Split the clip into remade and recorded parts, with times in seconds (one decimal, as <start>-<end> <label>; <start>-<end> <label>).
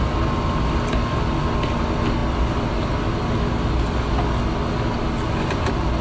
0.0-6.0 recorded